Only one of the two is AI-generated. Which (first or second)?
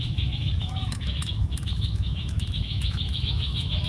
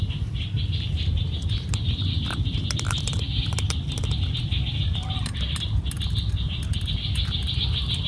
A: first